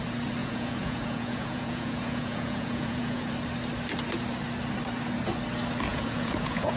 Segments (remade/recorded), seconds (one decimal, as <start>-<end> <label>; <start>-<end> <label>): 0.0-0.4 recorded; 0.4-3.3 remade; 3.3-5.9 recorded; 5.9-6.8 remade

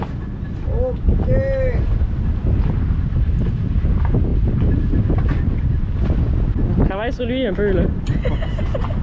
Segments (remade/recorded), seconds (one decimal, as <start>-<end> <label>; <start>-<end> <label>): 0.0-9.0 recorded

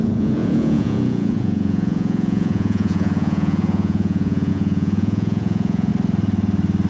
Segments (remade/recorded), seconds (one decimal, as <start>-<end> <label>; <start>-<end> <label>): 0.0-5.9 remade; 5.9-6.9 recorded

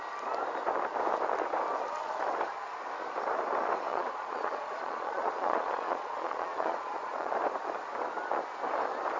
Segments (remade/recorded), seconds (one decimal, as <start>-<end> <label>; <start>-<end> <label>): 0.0-3.9 recorded; 3.9-7.3 remade; 7.3-9.2 recorded

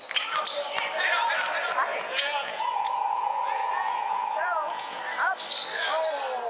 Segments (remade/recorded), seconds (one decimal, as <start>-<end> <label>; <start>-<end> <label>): 0.0-1.9 recorded; 1.9-5.0 remade; 5.0-6.5 recorded